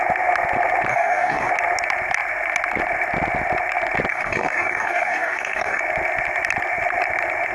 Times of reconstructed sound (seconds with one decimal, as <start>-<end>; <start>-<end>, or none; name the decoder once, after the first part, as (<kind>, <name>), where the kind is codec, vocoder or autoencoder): 0.9-1.5 (codec, DAC); 4.1-5.8